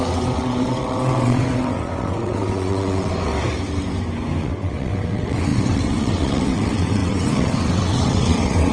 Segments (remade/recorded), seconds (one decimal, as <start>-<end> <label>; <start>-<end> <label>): 0.0-3.3 remade; 3.3-4.4 recorded; 4.4-8.7 remade